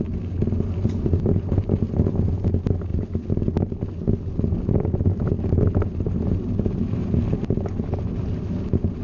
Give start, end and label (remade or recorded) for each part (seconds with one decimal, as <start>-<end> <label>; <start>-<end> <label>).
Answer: 0.0-9.0 recorded